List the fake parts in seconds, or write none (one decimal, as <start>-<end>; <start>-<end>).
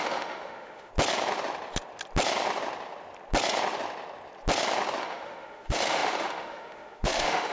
0.0-0.9; 5.0-7.5